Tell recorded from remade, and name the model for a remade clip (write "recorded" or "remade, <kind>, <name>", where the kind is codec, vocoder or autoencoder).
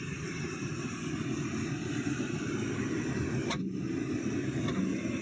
recorded